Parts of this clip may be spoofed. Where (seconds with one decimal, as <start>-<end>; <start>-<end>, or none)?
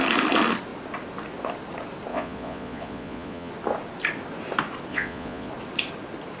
2.1-3.5; 4.9-5.5